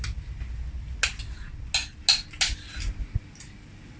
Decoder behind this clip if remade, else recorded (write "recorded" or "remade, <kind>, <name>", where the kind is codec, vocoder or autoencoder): recorded